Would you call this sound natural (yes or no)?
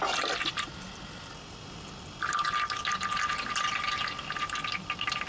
yes